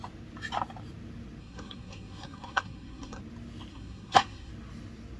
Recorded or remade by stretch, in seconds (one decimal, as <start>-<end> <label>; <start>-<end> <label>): 0.0-1.4 recorded; 1.4-3.2 remade; 3.2-3.7 recorded; 3.7-4.5 remade; 4.5-5.2 recorded